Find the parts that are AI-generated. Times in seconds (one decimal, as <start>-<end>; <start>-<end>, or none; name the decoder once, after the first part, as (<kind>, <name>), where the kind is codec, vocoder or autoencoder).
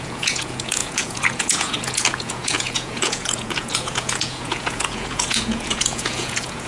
0.0-6.7 (vocoder, Vocos)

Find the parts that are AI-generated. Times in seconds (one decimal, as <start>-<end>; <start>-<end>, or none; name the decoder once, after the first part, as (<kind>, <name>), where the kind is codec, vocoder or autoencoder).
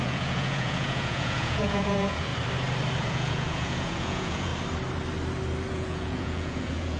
0.0-2.3 (vocoder, Vocos); 3.0-4.5; 5.7-7.0